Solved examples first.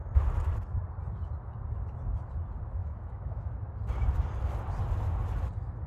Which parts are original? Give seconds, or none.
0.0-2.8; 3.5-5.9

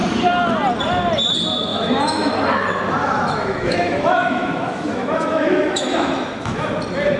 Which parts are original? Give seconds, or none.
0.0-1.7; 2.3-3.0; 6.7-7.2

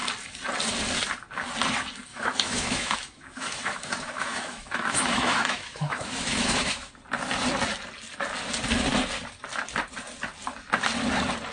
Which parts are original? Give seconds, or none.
0.0-2.1; 6.9-11.5